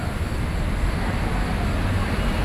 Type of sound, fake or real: real